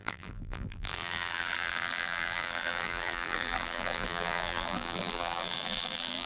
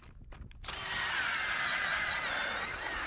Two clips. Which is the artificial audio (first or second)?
first